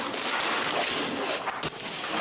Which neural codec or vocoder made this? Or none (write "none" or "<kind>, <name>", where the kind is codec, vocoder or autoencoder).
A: none